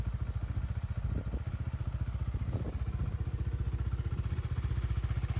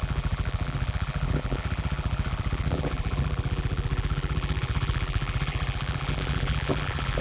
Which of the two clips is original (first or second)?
first